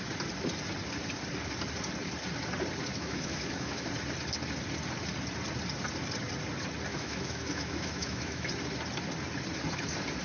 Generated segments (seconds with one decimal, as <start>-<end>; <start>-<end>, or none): 2.9-3.9; 6.9-8.5